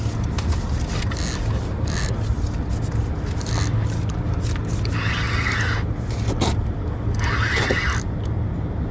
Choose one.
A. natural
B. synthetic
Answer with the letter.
A